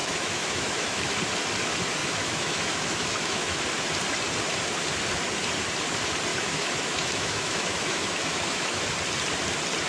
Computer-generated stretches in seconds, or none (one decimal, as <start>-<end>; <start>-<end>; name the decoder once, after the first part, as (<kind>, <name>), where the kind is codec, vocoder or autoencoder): 0.0-1.2 (autoencoder, DAC-VAE); 2.0-3.6; 6.3-8.9